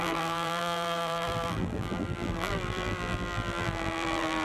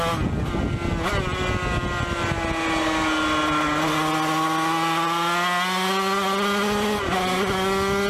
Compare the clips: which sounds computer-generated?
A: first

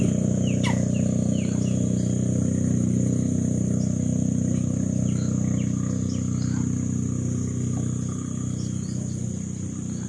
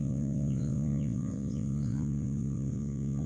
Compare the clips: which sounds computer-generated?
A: second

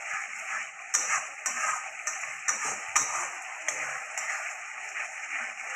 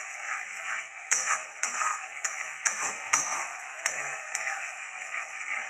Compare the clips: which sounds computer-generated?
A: second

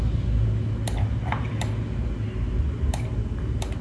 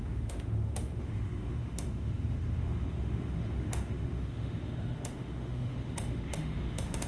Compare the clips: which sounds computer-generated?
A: second